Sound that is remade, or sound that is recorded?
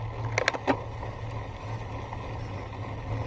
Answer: recorded